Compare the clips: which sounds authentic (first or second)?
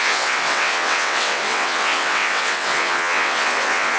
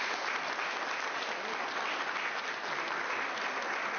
second